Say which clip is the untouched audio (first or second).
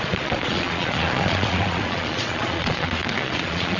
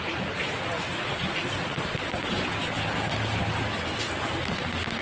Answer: second